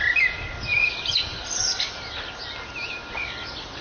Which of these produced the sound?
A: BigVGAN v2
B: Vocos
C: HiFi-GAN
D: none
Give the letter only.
D